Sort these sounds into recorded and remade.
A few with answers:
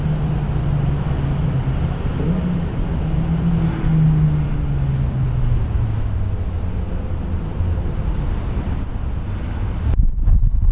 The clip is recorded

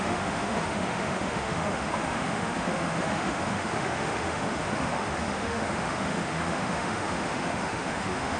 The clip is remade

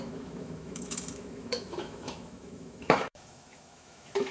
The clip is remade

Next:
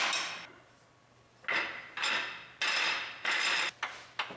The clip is recorded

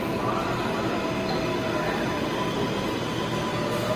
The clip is recorded